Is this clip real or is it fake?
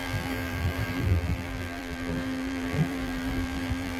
fake